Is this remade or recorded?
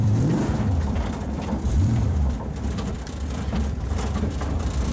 remade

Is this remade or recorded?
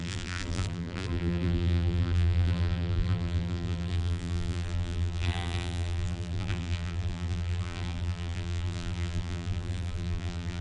remade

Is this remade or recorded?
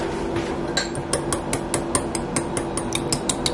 recorded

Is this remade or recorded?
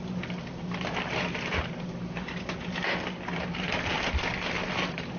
remade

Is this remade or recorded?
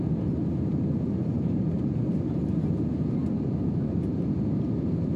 remade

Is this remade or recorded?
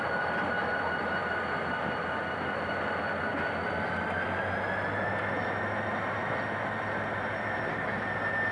recorded